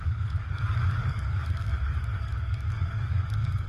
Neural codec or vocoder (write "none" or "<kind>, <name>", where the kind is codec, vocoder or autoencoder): codec, DAC